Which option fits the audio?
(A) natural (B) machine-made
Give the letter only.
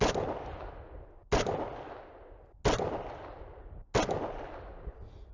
A